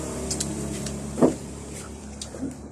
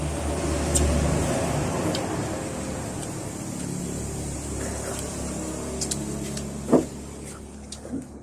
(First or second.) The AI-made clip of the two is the first